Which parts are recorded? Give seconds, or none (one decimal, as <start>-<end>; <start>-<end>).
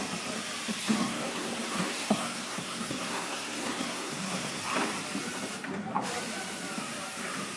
0.0-0.8; 4.6-7.6